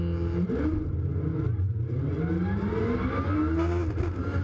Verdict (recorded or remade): recorded